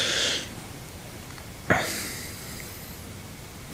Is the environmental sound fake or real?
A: real